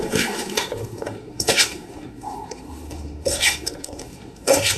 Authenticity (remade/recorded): remade